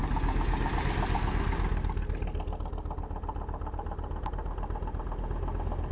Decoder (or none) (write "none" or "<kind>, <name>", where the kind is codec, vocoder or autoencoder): none